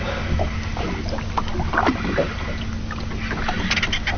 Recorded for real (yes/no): yes